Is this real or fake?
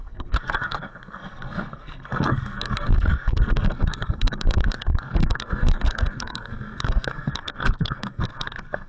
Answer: fake